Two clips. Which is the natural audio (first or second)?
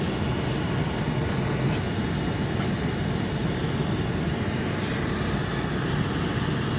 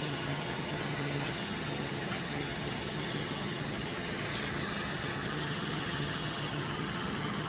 first